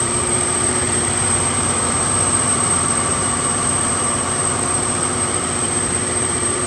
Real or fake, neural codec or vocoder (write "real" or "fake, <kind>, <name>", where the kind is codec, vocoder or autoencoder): fake, vocoder, BigVGAN v2